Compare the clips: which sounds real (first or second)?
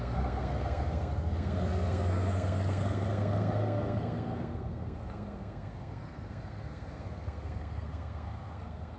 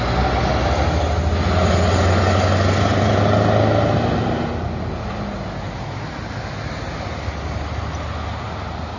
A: second